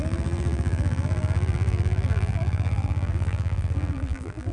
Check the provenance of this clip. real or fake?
fake